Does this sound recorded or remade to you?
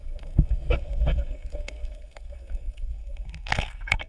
remade